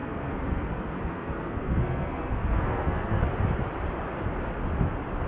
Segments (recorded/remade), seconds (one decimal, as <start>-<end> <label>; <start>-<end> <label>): 0.0-3.2 remade; 3.2-5.3 recorded